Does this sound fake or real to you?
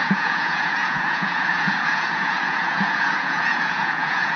fake